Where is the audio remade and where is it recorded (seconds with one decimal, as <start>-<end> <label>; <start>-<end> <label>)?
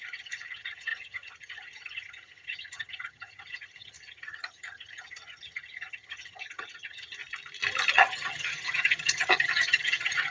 0.0-7.2 remade; 7.2-7.9 recorded; 7.9-10.3 remade